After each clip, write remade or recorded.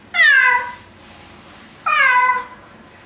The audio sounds recorded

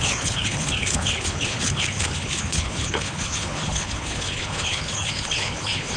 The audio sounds remade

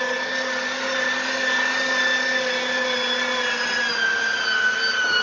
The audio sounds recorded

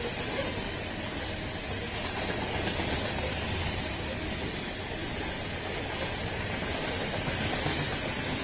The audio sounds recorded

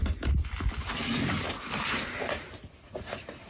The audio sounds recorded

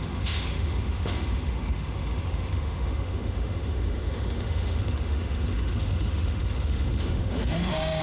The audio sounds remade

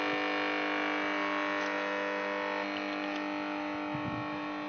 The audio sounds recorded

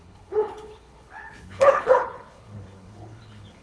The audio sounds remade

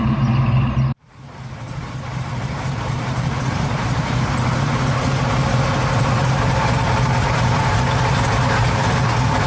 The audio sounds remade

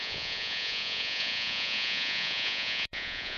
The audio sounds remade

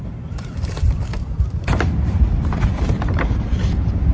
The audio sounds remade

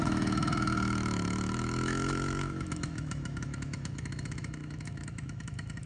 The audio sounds remade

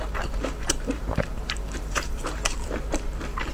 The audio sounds remade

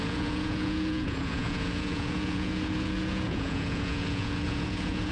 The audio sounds remade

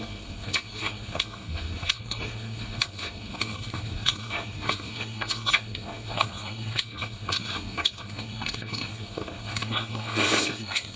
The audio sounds remade